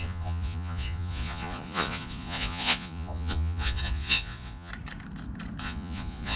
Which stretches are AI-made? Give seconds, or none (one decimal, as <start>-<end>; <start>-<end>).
0.0-4.7; 5.6-6.4